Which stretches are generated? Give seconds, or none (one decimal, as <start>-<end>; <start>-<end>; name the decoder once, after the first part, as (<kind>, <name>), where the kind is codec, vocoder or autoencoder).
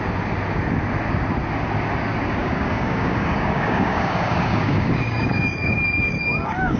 2.4-6.8 (codec, DAC)